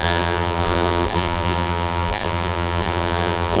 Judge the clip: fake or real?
fake